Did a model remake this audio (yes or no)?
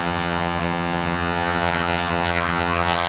yes